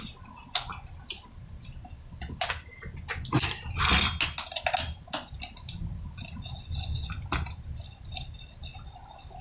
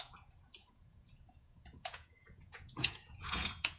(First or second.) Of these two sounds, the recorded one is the first